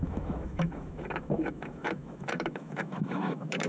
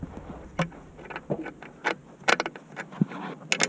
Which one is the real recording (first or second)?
second